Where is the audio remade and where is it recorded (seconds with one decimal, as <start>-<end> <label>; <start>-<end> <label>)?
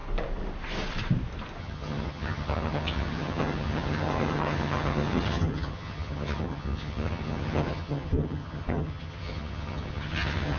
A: 0.0-1.6 recorded; 1.6-10.6 remade